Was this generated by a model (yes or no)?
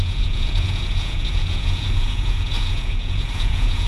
yes